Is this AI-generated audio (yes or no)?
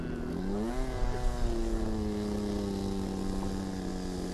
no